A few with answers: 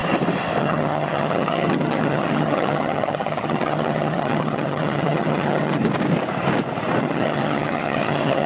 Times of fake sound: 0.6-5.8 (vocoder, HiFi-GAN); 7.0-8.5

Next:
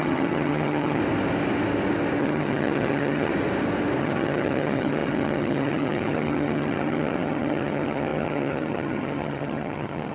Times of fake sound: 0.0-1.0 (vocoder, HiFi-GAN); 2.2-3.3; 4.0-10.1

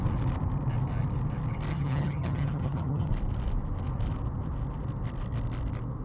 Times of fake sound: 1.7-3.1 (vocoder, HiFi-GAN)

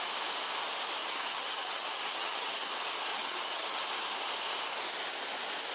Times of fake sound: 1.0-2.7 (vocoder, HiFi-GAN); 3.1-3.8

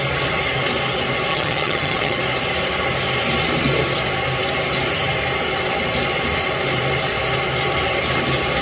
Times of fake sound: 1.3-2.2 (vocoder, HiFi-GAN)

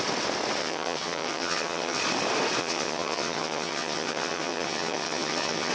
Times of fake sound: 0.6-2.0 (vocoder, HiFi-GAN); 2.6-5.7

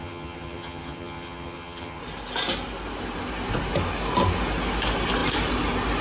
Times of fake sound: 0.0-2.0 (vocoder, HiFi-GAN)

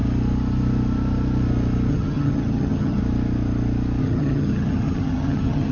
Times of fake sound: 1.9-3.0 (vocoder, HiFi-GAN); 4.0-5.7